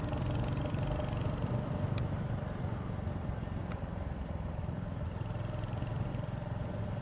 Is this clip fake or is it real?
fake